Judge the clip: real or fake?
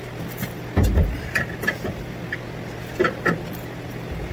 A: real